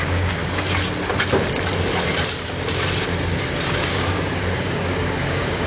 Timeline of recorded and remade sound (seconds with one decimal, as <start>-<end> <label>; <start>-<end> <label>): 0.0-0.4 remade; 0.4-3.8 recorded; 3.8-5.7 remade